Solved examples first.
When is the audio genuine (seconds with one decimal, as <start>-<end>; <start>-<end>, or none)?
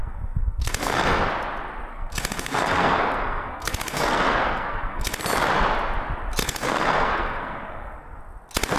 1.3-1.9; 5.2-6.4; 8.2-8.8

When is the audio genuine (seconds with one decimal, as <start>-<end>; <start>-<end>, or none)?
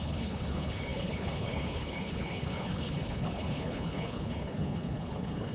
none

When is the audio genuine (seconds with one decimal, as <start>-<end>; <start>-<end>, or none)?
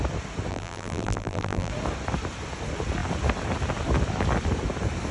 0.0-0.5; 1.7-5.1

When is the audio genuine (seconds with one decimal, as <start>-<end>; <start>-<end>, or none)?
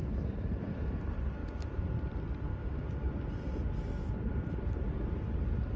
0.0-2.5; 3.1-5.8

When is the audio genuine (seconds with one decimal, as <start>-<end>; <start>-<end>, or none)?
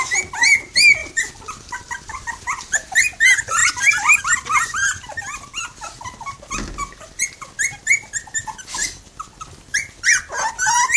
0.0-1.0; 3.0-11.0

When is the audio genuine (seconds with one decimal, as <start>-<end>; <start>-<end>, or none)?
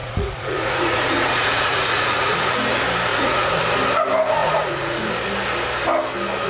2.5-3.1; 3.6-4.4; 5.1-6.5